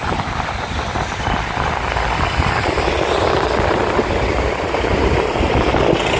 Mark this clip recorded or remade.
recorded